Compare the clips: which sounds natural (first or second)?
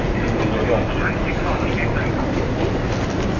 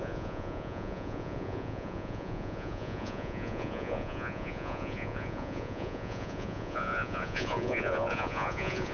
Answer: first